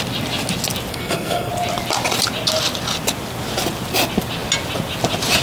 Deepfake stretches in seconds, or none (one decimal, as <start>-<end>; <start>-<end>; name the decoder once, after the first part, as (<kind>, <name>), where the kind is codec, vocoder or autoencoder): 0.9-1.5 (codec, SNAC)

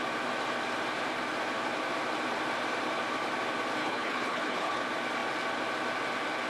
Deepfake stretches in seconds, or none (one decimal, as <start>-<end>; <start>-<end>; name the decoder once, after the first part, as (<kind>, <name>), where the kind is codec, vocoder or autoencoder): 3.8-4.8 (codec, HILCodec)

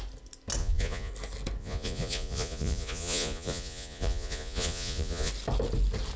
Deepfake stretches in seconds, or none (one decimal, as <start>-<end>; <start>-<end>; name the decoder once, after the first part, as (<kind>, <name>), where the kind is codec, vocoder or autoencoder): 0.6-1.1 (vocoder, Vocos); 1.6-5.3

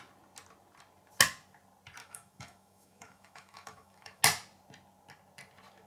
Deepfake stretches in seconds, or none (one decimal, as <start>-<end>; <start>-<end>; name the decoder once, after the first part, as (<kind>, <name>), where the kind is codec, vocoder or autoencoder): 2.0-4.2 (autoencoder, DAC-VAE)

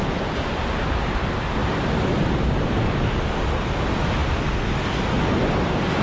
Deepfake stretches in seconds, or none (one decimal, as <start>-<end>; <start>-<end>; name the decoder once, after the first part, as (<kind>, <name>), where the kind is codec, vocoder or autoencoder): 1.6-3.3 (vocoder, BigVGAN v2)

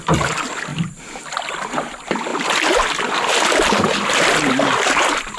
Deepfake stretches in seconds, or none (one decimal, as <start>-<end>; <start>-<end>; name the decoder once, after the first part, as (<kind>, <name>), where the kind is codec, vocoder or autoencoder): 0.7-1.9 (vocoder, BigVGAN v2); 2.3-3.7